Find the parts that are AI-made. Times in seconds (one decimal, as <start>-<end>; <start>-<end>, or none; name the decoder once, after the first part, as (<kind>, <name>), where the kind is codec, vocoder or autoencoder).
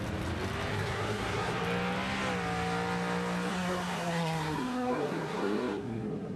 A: 0.7-1.6 (codec, SNAC); 3.5-6.4